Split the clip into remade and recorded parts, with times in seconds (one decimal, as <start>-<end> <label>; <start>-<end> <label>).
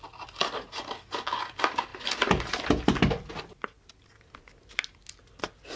0.0-5.8 recorded